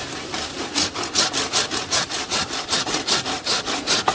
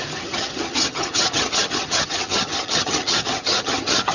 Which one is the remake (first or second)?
second